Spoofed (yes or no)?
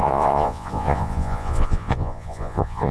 yes